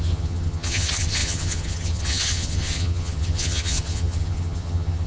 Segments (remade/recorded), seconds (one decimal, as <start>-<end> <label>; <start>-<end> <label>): 0.0-5.1 remade